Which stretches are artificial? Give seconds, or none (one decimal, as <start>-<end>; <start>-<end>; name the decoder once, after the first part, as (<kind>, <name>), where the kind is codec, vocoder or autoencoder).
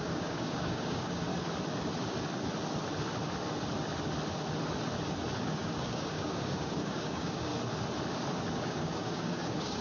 0.0-1.3 (codec, DAC); 5.4-7.5; 8.5-9.8